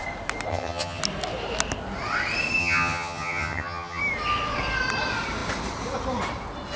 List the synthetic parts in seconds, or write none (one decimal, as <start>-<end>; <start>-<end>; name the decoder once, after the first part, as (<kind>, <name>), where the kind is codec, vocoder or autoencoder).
0.5-1.0 (vocoder, HiFi-GAN); 2.6-4.0